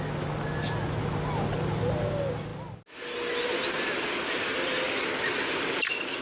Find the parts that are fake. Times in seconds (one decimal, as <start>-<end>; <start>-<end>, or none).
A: none